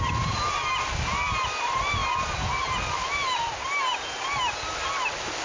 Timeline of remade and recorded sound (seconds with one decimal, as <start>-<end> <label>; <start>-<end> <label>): 0.0-5.4 recorded